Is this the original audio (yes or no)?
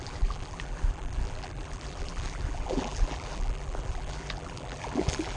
no